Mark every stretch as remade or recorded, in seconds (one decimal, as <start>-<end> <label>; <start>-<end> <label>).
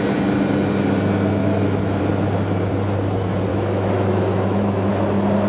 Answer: 0.0-1.4 recorded; 1.4-2.0 remade; 2.0-3.5 recorded; 3.5-4.9 remade; 4.9-5.5 recorded